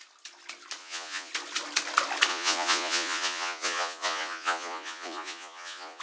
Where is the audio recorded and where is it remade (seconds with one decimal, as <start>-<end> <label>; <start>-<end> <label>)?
0.0-0.8 recorded; 0.8-1.3 remade; 1.3-2.3 recorded; 2.3-6.0 remade